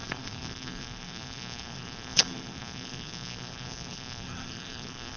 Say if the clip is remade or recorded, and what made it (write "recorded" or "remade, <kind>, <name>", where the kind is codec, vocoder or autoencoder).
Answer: remade, codec, SNAC